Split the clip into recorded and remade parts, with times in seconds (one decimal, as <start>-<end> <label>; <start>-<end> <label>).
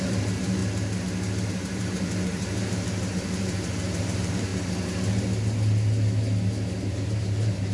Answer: 0.0-0.6 remade; 0.6-1.5 recorded; 1.5-4.5 remade; 4.5-6.8 recorded; 6.8-7.7 remade